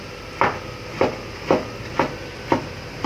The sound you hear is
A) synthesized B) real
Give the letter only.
B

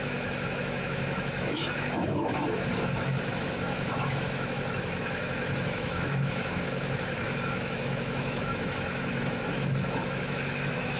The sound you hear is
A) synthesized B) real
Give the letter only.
A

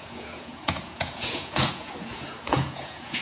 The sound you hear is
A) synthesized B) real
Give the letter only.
A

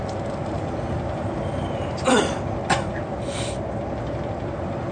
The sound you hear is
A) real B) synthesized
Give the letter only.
A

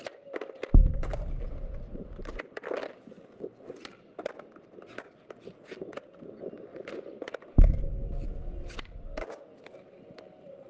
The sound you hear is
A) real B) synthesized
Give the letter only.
A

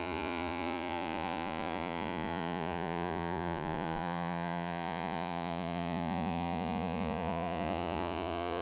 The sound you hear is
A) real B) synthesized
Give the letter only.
B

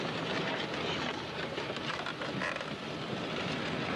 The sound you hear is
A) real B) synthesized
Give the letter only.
A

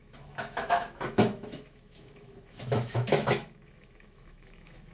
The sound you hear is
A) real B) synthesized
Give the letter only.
B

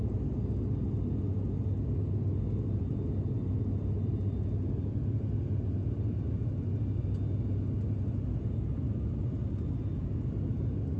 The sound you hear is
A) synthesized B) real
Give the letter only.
B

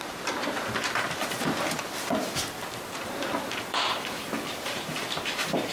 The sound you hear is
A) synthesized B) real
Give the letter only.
A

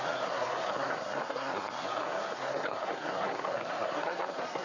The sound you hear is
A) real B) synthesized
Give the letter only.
B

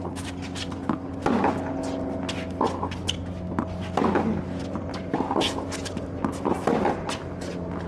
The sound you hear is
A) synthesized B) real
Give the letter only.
B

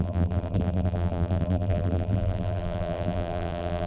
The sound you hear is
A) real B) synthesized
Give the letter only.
B